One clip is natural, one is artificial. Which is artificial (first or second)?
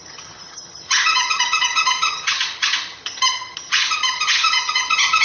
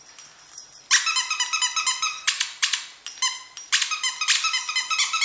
first